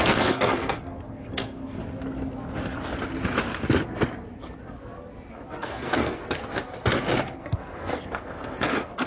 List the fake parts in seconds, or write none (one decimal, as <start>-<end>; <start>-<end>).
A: 0.0-1.8; 5.3-6.4; 7.2-9.1